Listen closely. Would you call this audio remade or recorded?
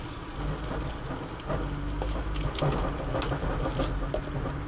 recorded